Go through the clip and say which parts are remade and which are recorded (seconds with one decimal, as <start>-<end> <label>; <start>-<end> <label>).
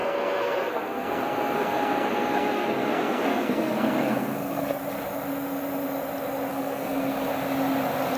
0.0-4.8 remade; 4.8-6.5 recorded; 6.5-7.3 remade; 7.3-8.2 recorded